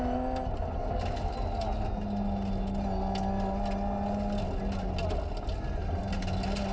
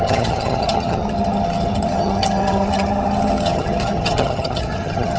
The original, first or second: first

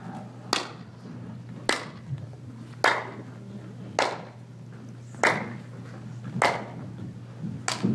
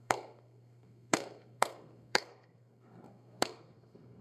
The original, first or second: first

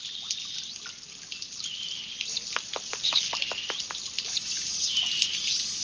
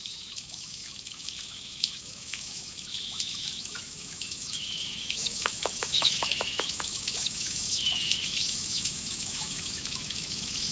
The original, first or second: first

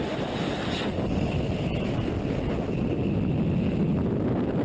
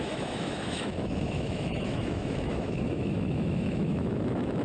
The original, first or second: first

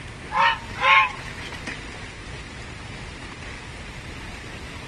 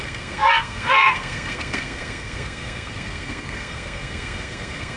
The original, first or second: first